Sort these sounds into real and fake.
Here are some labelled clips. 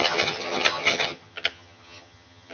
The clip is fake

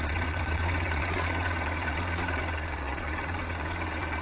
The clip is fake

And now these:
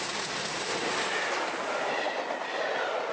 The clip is real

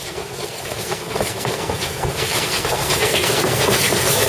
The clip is fake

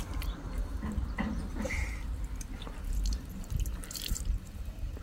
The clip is fake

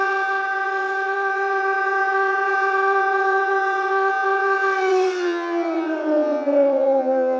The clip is fake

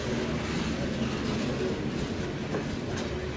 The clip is real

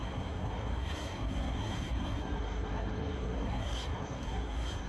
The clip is fake